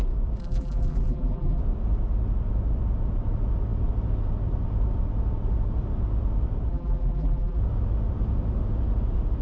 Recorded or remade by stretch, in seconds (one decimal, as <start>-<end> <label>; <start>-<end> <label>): 0.0-0.4 recorded; 0.4-1.6 remade; 1.6-6.7 recorded; 6.7-7.6 remade; 7.6-9.4 recorded

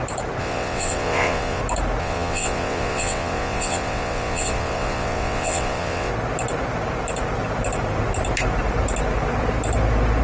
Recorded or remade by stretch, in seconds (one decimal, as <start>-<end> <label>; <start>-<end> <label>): 0.0-0.4 recorded; 0.4-1.6 remade; 1.6-2.0 recorded; 2.0-6.1 remade; 6.1-10.2 recorded